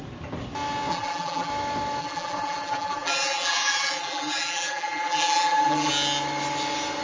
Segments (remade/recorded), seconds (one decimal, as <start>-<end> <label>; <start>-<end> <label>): 0.0-0.9 recorded; 0.9-1.5 remade; 1.5-2.0 recorded; 2.0-5.9 remade; 5.9-7.0 recorded